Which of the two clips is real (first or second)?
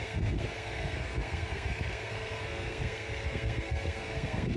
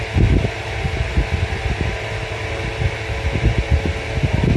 second